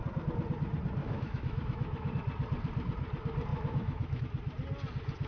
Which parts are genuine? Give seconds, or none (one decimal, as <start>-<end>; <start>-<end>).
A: 0.0-1.0; 2.1-3.5; 4.2-5.3